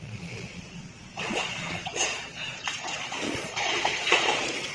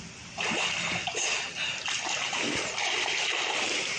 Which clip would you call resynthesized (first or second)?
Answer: first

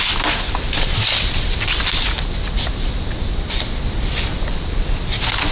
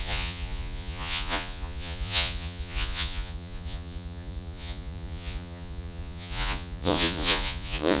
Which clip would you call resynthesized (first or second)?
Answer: second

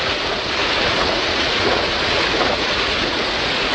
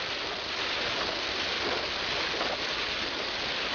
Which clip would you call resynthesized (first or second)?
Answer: first